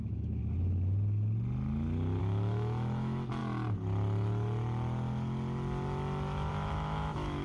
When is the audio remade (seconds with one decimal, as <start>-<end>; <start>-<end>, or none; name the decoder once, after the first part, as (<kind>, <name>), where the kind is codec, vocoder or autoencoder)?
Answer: 0.0-0.4 (autoencoder, DAC-VAE); 2.2-3.4; 6.5-7.4